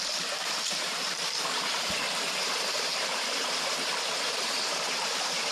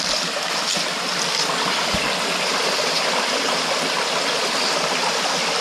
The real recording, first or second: second